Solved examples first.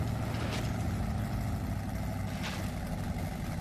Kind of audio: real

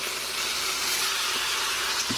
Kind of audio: real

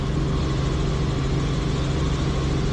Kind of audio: real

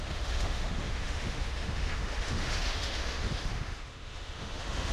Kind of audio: fake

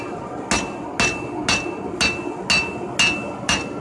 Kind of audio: real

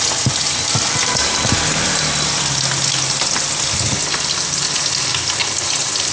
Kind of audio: real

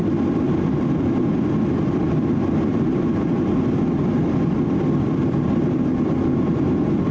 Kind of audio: real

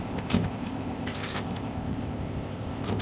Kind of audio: fake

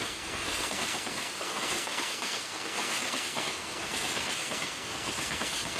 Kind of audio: fake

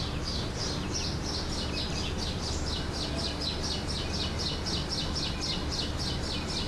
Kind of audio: real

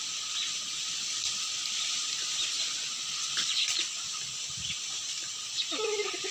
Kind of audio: real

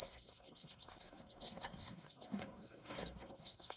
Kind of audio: fake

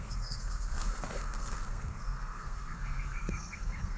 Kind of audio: fake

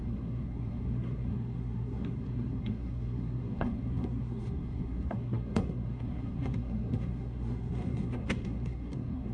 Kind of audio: fake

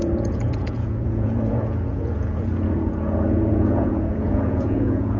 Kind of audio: fake